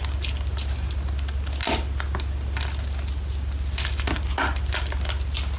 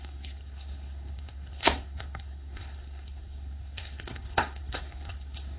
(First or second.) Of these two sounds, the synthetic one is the second